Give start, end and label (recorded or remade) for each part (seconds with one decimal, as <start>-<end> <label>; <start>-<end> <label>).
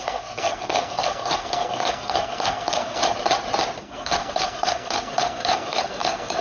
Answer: 0.0-3.0 remade; 3.0-3.8 recorded; 3.8-6.4 remade